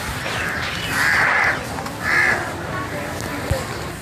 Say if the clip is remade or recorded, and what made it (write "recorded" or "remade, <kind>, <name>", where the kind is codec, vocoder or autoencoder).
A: recorded